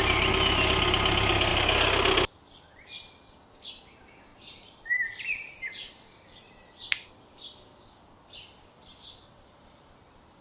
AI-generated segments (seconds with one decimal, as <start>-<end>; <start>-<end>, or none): 4.3-5.9